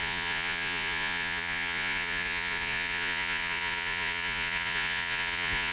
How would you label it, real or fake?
fake